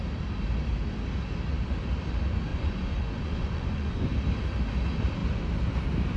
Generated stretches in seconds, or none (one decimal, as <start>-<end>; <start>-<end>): 2.5-4.1